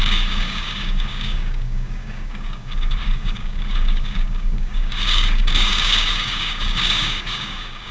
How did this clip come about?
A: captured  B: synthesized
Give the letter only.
B